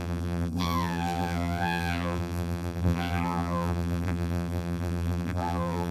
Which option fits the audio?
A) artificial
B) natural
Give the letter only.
A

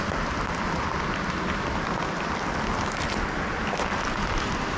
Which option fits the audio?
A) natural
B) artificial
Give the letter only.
A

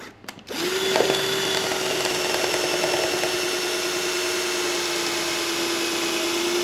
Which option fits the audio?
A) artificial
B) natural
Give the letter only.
B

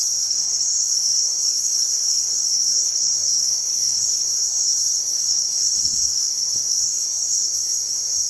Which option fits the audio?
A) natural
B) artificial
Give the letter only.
B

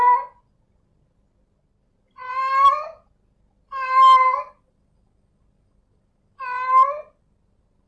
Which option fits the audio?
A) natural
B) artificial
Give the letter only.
A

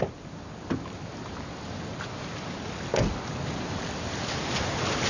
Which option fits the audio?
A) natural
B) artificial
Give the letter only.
A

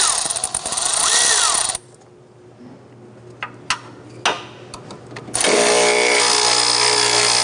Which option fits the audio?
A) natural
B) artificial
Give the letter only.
A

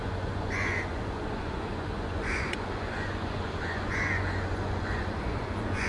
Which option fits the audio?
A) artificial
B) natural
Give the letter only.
A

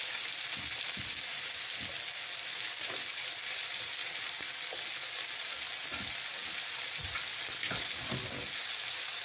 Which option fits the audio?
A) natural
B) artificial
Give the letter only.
A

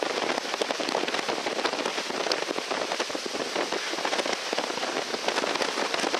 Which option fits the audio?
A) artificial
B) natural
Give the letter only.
B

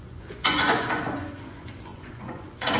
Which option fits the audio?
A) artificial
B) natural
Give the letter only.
A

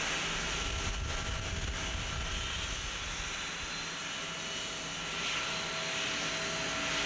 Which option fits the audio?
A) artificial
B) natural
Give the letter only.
B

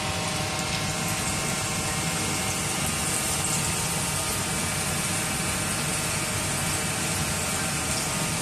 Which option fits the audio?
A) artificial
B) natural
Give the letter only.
B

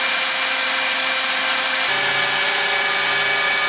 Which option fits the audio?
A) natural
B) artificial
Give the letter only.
A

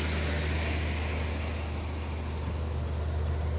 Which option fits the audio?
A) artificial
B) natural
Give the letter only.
B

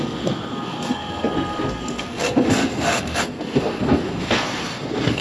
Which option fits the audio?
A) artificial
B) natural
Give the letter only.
A